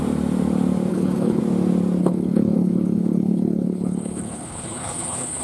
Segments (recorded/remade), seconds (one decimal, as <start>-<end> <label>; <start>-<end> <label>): 0.0-0.9 recorded; 0.9-1.4 remade; 1.4-2.0 recorded; 2.0-5.4 remade